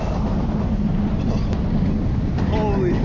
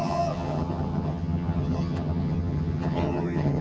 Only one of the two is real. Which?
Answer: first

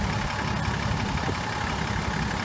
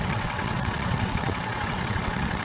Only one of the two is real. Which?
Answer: first